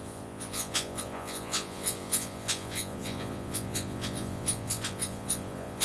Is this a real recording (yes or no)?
no